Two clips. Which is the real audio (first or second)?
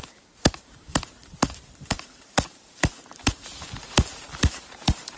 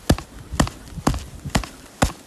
second